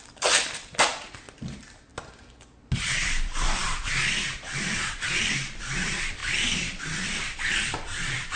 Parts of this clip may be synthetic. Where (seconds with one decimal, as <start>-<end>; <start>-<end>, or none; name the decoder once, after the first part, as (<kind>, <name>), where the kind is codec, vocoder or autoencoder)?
0.0-1.9 (vocoder, BigVGAN v2); 2.8-8.4